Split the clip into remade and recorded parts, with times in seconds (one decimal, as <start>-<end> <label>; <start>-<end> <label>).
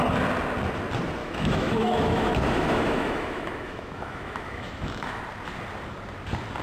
0.0-1.2 recorded; 1.2-5.2 remade; 5.2-6.6 recorded